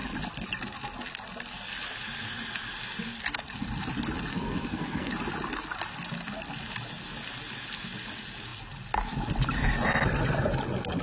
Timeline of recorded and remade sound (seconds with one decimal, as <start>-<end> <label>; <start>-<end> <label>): 0.0-4.3 recorded; 4.3-5.1 remade; 5.1-11.0 recorded